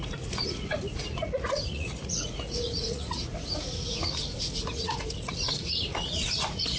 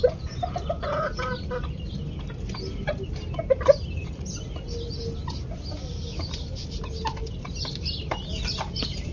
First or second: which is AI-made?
first